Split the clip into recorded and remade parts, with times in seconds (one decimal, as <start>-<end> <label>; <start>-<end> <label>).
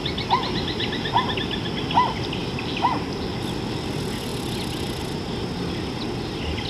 0.0-1.4 remade; 1.4-4.3 recorded; 4.3-5.0 remade; 5.0-6.7 recorded